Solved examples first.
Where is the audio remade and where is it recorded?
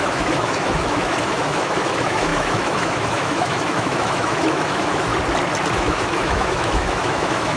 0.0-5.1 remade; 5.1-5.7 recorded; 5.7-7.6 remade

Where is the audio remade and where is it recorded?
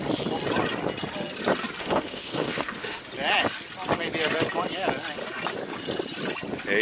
0.0-1.8 recorded; 1.8-3.0 remade; 3.0-6.8 recorded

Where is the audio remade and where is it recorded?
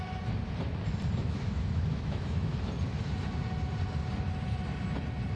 0.0-1.2 recorded; 1.2-2.5 remade; 2.5-5.4 recorded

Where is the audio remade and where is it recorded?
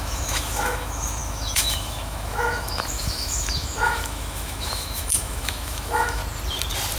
0.0-6.2 remade; 6.2-7.0 recorded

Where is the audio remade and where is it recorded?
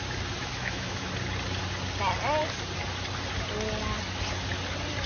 0.0-0.4 recorded; 0.4-1.1 remade; 1.1-5.1 recorded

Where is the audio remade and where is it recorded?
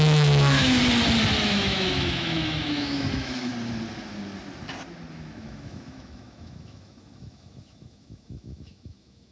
0.0-0.8 remade; 0.8-1.4 recorded; 1.4-3.5 remade; 3.5-5.1 recorded; 5.1-9.3 remade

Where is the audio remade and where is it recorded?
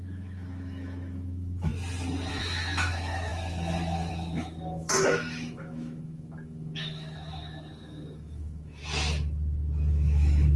0.0-1.7 remade; 1.7-2.3 recorded; 2.3-8.8 remade; 8.8-9.9 recorded; 9.9-10.6 remade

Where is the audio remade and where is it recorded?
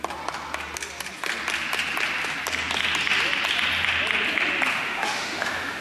0.0-4.7 recorded; 4.7-5.8 remade